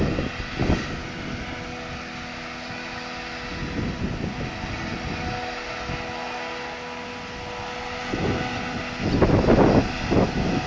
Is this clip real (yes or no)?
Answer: yes